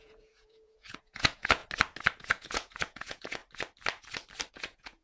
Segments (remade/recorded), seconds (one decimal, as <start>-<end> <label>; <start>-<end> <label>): 0.0-1.6 remade; 1.6-2.2 recorded; 2.2-3.4 remade; 3.4-4.5 recorded; 4.5-5.0 remade